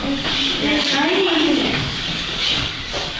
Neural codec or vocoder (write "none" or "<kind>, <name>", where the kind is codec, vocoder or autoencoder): codec, DAC